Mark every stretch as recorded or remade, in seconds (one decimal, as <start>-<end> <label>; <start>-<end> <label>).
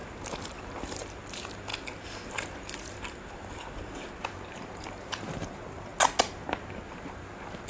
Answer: 0.0-5.9 remade; 5.9-6.9 recorded; 6.9-7.7 remade